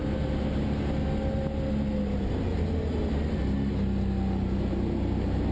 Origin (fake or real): real